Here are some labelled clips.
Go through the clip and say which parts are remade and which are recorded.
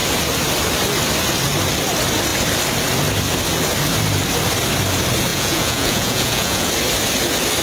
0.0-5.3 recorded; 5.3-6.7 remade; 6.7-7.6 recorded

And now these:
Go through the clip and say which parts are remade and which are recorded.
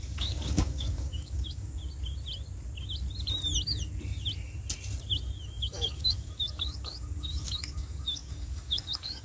0.0-1.8 remade; 1.8-5.6 recorded; 5.6-9.2 remade